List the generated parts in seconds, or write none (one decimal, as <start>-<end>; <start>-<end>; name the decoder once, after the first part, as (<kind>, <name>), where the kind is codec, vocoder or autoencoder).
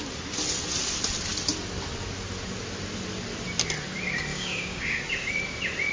4.3-5.0 (codec, DAC)